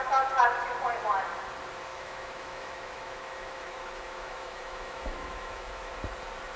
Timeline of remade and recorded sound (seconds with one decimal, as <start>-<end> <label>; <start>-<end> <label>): 0.0-1.9 recorded; 1.9-5.9 remade; 5.9-6.6 recorded